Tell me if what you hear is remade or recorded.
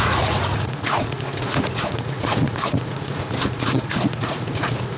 remade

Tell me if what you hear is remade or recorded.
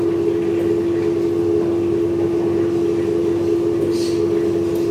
recorded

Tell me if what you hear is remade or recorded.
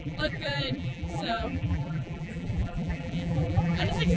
remade